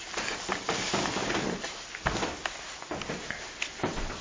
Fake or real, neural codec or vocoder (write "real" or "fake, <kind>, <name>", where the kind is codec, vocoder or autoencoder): real